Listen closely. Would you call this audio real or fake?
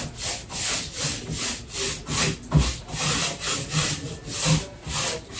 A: real